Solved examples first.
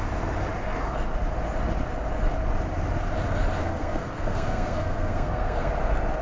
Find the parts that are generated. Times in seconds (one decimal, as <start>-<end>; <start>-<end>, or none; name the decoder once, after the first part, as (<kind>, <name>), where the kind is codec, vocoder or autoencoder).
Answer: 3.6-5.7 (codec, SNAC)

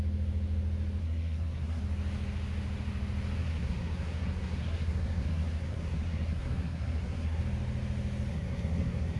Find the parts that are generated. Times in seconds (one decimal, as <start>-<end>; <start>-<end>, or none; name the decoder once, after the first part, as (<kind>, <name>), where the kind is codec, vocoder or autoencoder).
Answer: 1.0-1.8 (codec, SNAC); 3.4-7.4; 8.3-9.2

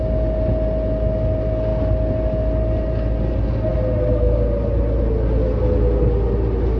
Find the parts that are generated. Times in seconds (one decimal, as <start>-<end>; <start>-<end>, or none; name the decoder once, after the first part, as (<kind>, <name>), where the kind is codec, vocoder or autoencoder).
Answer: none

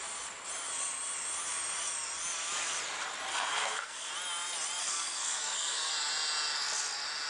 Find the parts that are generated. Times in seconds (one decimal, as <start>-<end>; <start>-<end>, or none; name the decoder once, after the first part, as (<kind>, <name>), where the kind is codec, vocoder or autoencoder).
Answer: 3.3-4.1 (codec, SNAC); 4.8-5.9

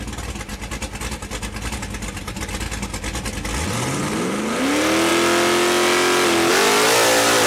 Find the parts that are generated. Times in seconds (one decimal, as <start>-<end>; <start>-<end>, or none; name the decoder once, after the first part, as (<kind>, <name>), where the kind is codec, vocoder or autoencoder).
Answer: none

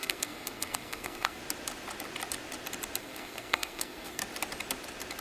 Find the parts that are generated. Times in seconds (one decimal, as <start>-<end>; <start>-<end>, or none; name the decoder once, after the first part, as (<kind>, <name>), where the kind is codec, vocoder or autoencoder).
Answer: 0.0-1.4 (codec, SNAC); 3.0-4.2